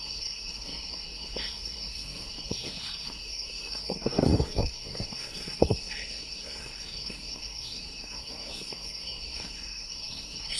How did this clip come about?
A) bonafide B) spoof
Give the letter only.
B